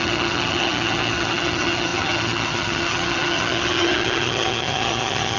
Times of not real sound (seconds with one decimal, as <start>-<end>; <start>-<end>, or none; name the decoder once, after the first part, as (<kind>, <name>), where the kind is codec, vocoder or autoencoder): 0.0-5.4 (vocoder, HiFi-GAN)